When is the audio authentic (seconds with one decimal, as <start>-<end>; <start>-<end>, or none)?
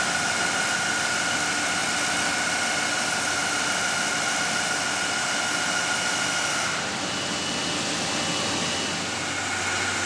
0.0-10.1